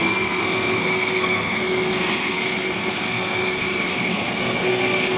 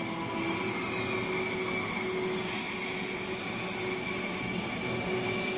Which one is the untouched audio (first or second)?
second